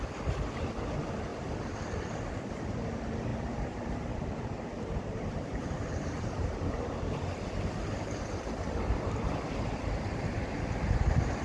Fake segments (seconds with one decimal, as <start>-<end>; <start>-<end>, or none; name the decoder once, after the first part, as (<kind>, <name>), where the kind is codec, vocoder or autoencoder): 3.3-7.2 (vocoder, BigVGAN v2)